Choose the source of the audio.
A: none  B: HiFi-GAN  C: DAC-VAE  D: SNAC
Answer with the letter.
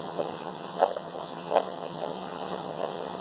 B